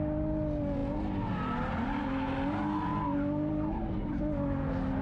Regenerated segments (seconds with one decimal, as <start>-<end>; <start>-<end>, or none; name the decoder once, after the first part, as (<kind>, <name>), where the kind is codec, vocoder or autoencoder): none